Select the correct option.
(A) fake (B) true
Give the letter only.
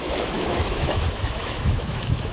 A